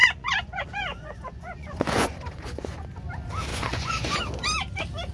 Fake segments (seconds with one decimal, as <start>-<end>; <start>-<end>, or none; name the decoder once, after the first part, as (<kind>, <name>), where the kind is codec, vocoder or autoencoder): 0.0-3.1 (vocoder, Vocos); 3.5-4.2